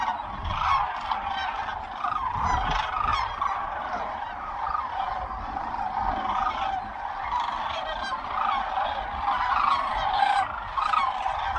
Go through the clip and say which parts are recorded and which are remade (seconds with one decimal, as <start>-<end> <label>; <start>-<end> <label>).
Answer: 0.0-3.1 recorded; 3.1-4.9 remade; 4.9-11.6 recorded